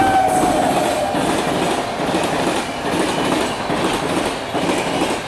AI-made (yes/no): no